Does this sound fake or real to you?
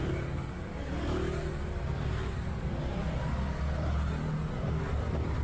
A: real